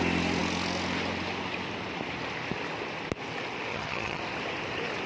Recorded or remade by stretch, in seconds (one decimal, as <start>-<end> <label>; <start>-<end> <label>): 0.0-3.7 recorded; 3.7-4.2 remade; 4.2-5.1 recorded